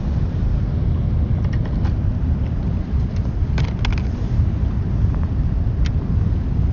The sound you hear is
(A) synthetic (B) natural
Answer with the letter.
B